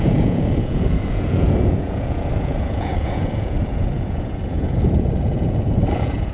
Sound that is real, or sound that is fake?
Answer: fake